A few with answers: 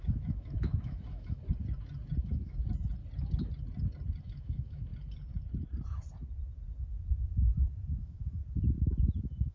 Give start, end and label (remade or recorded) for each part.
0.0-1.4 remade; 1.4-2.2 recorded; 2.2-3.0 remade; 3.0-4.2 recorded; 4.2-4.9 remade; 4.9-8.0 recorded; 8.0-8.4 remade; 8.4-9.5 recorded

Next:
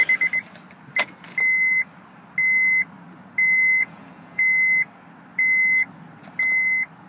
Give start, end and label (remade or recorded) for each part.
0.0-3.8 recorded; 3.8-4.4 remade; 4.4-7.1 recorded

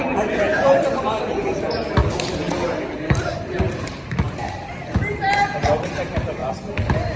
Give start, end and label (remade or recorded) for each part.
0.0-7.2 recorded

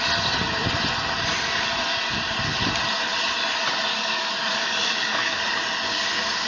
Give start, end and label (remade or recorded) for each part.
0.0-3.9 recorded; 3.9-5.4 remade; 5.4-6.5 recorded

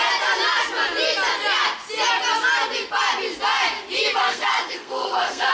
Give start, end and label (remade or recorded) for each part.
0.0-4.2 recorded; 4.2-5.5 remade